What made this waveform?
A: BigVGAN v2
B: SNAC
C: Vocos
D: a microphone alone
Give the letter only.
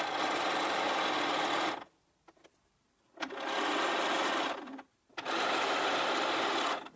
D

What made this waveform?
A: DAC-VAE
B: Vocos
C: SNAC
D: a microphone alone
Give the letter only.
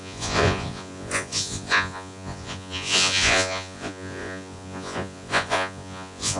B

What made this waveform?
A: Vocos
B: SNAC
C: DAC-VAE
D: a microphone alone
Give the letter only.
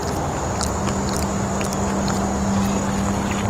D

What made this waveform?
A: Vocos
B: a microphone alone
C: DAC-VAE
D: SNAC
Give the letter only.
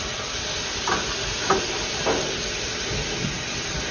B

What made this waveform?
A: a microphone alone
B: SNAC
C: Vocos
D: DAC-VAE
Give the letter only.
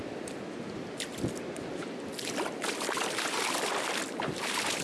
A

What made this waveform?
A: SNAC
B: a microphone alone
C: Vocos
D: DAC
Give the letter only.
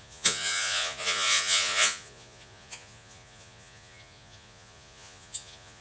C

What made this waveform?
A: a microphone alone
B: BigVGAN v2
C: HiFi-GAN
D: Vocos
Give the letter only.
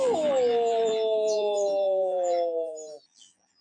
B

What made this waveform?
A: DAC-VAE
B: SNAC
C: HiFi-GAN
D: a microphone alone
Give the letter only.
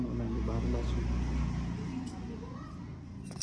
D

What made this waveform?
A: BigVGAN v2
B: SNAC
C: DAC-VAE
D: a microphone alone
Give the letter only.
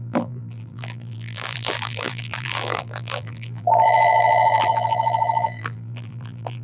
A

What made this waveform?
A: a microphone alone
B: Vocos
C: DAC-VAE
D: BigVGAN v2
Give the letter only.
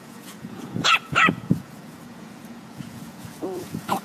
B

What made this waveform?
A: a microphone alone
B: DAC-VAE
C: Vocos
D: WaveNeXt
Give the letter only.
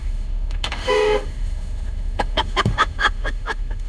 B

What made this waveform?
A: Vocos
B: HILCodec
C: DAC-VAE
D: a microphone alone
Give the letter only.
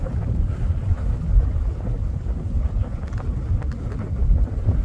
D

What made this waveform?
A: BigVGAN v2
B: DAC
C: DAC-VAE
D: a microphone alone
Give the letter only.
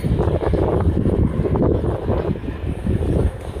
D